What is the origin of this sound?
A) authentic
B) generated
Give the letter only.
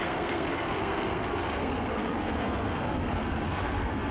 B